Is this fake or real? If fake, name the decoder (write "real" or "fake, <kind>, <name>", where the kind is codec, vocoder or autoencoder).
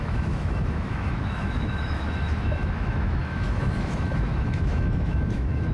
fake, autoencoder, DAC-VAE